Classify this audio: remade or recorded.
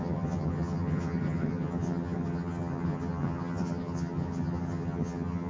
remade